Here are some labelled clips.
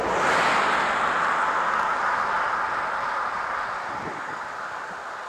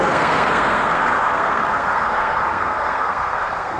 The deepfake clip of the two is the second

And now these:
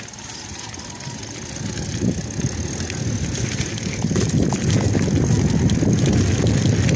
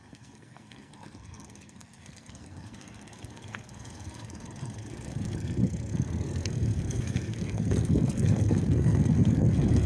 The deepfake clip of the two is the second